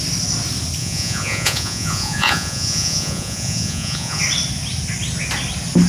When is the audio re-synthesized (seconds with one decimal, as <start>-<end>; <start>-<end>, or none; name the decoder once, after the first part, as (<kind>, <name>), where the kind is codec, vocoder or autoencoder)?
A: 0.8-4.2 (vocoder, Vocos)